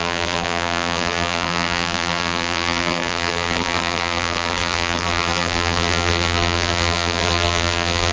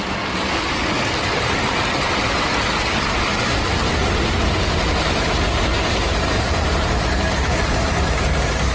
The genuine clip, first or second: second